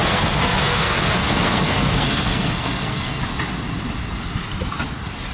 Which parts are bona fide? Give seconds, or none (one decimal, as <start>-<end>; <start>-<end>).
3.2-5.3